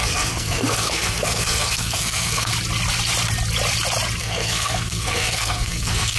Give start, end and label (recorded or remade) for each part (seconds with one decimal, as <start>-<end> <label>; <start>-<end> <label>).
0.0-2.5 remade; 2.5-4.2 recorded; 4.2-6.2 remade